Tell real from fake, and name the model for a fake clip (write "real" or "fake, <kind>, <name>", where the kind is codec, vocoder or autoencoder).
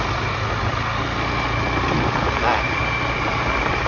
real